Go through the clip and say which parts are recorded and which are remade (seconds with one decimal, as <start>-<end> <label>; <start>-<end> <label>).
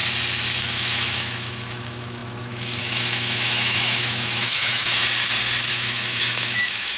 0.0-0.6 recorded; 0.6-5.0 remade; 5.0-5.7 recorded; 5.7-7.0 remade